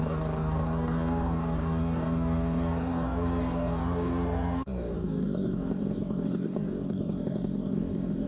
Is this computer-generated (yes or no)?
yes